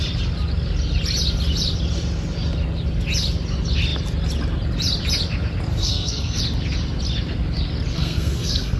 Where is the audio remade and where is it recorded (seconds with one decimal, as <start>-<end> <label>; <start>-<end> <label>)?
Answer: 0.0-5.8 recorded; 5.8-6.4 remade; 6.4-7.9 recorded; 7.9-8.8 remade